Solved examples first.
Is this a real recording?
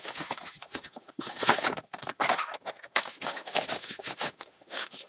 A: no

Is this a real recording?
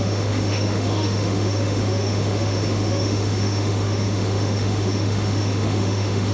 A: no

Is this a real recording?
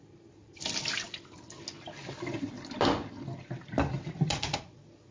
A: yes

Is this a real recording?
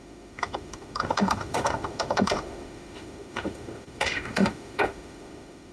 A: no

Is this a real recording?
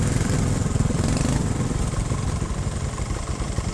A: yes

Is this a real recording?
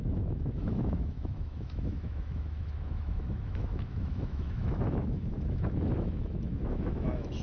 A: no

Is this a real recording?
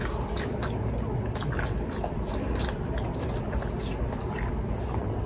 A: yes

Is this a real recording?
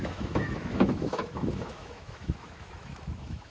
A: no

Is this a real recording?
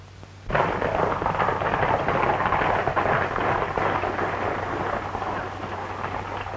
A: yes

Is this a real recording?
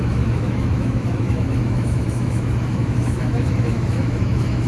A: no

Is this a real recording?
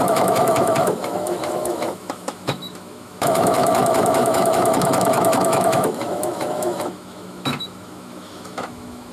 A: no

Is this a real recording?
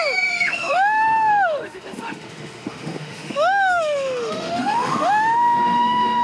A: no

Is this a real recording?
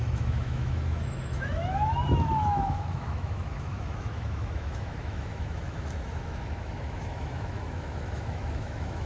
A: no